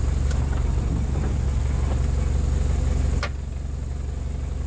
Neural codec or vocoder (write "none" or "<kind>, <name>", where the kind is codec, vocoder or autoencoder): none